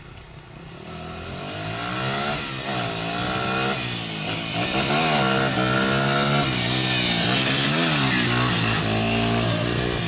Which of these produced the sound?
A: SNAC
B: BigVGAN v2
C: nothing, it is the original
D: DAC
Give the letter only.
C